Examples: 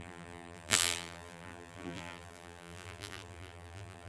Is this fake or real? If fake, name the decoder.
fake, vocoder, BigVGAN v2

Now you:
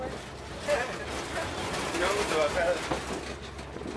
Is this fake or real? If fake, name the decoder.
real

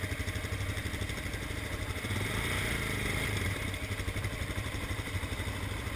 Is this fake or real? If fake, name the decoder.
fake, vocoder, BigVGAN v2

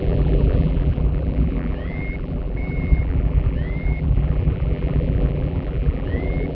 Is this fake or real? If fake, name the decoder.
fake, vocoder, BigVGAN v2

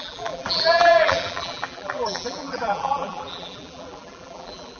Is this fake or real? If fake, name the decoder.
fake, vocoder, BigVGAN v2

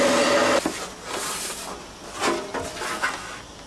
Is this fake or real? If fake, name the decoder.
real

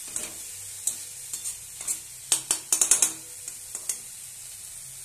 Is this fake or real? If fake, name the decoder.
real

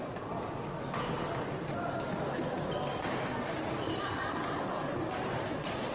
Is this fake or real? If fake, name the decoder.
real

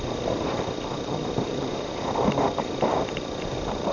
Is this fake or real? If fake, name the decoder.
fake, vocoder, BigVGAN v2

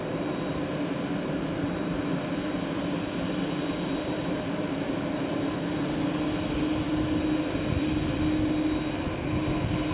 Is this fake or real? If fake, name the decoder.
real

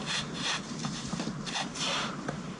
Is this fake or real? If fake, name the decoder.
fake, vocoder, BigVGAN v2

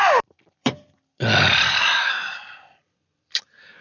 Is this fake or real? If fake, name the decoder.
fake, vocoder, BigVGAN v2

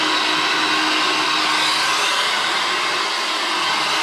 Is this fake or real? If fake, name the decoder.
real